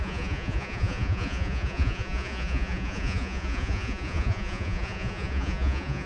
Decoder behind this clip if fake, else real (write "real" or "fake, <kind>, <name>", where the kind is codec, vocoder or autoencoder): fake, vocoder, Vocos